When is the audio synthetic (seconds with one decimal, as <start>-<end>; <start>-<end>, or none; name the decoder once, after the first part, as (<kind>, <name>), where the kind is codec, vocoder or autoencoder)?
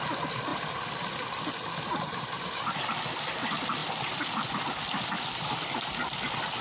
none